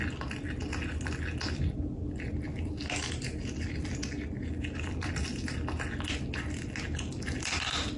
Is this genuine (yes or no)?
yes